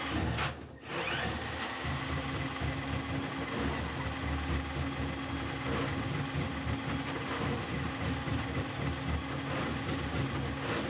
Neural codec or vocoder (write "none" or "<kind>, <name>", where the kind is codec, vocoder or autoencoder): none